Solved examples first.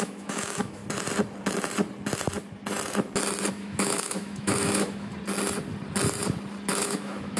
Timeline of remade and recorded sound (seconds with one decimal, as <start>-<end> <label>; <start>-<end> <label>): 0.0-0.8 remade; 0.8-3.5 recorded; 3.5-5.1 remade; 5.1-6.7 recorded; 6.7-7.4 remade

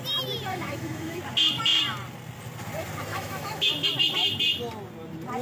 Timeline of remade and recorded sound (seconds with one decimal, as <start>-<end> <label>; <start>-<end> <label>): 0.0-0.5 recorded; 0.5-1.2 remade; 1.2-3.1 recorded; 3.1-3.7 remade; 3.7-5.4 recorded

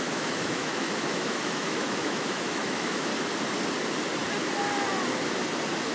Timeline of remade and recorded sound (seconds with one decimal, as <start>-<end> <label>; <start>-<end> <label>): 0.0-3.1 remade; 3.1-5.9 recorded

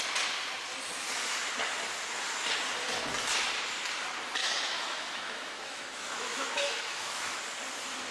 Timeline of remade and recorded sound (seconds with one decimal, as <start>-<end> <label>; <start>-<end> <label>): 0.0-4.4 recorded; 4.4-7.4 remade; 7.4-8.1 recorded

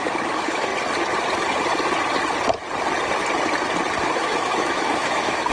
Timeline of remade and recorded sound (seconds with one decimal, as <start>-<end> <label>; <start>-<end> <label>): 0.0-0.7 remade; 0.7-4.0 recorded; 4.0-5.5 remade